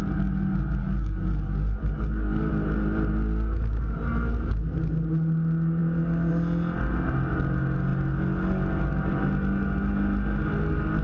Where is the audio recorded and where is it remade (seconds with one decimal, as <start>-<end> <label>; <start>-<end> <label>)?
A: 0.0-0.8 recorded; 0.8-2.5 remade; 2.5-11.0 recorded

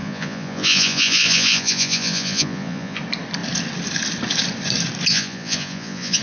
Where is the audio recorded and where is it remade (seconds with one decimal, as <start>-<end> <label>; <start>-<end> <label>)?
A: 0.0-3.0 remade; 3.0-5.1 recorded; 5.1-6.2 remade

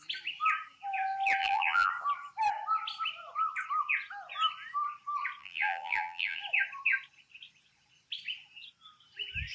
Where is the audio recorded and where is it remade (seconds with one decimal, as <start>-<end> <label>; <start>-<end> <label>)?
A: 0.0-1.4 recorded; 1.4-1.9 remade; 1.9-5.4 recorded; 5.4-6.4 remade; 6.4-9.5 recorded

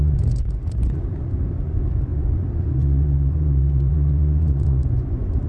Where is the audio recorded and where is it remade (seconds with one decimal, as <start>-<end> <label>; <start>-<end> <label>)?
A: 0.0-5.5 remade

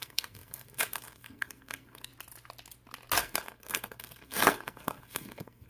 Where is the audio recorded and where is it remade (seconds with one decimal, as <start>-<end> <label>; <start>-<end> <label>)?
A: 0.0-2.1 remade; 2.1-3.2 recorded; 3.2-5.7 remade

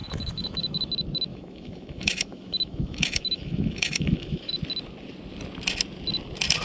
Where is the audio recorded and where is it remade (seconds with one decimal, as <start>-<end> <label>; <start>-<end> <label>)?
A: 0.0-0.9 remade; 0.9-1.3 recorded; 1.3-4.5 remade; 4.5-6.6 recorded

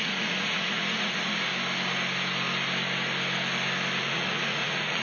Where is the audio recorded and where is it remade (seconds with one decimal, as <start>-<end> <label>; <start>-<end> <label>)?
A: 0.0-1.5 remade; 1.5-4.0 recorded; 4.0-5.0 remade